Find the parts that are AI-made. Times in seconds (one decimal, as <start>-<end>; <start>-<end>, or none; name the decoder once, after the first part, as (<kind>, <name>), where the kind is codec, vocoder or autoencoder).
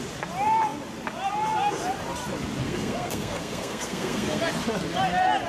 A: 2.6-4.4 (codec, SNAC)